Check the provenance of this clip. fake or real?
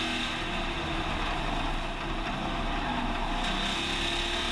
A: real